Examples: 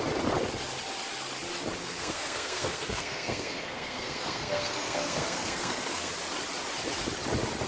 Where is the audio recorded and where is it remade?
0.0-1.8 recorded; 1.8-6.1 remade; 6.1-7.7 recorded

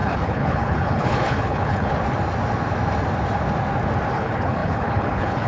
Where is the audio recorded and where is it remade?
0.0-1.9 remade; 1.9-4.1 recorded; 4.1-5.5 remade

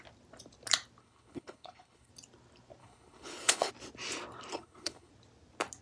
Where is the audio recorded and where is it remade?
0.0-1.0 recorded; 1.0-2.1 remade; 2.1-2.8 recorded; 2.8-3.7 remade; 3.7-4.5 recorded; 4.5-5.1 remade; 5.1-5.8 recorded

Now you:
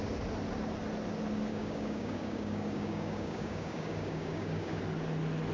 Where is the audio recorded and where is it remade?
0.0-1.5 recorded; 1.5-4.8 remade; 4.8-5.5 recorded

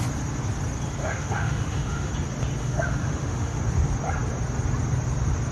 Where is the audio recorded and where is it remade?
0.0-1.0 recorded; 1.0-2.1 remade; 2.1-2.6 recorded; 2.6-3.6 remade; 3.6-5.5 recorded